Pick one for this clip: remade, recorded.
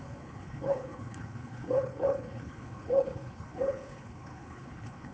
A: remade